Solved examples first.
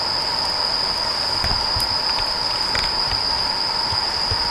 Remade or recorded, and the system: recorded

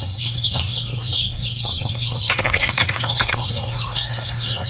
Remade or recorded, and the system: remade, codec, SNAC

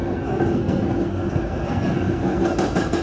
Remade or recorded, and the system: remade, codec, SNAC